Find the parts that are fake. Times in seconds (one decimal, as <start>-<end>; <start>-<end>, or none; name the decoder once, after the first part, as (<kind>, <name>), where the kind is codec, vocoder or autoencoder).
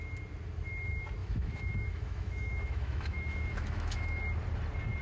1.2-4.2 (autoencoder, DAC-VAE)